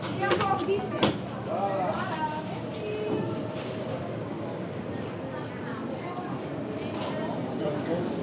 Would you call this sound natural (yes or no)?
yes